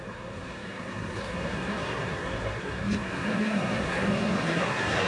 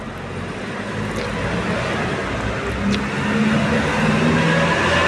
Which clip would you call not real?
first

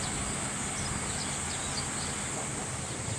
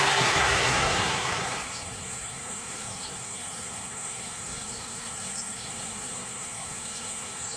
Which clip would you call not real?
second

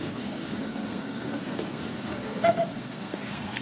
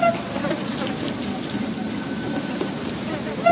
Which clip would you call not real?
first